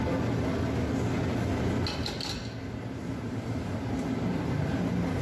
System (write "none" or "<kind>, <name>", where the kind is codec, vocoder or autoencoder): none